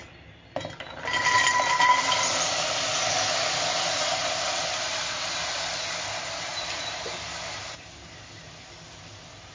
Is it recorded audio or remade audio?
recorded